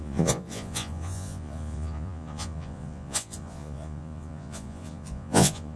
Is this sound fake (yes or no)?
yes